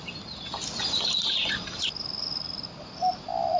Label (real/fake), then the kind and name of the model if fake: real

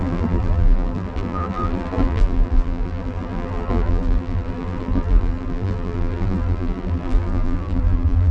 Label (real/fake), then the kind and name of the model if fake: fake, vocoder, BigVGAN v2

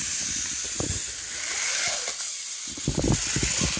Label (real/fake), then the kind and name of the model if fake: real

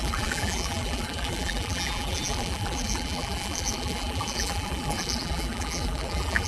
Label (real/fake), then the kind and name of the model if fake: fake, vocoder, BigVGAN v2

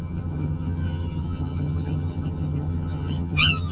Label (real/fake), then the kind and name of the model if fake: fake, vocoder, HiFi-GAN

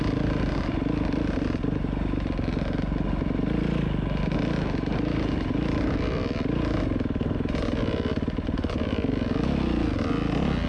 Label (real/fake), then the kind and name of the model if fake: real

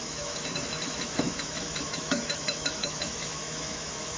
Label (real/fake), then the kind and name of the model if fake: fake, autoencoder, DAC-VAE